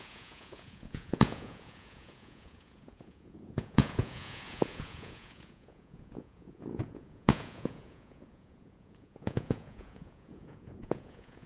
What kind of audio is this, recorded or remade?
remade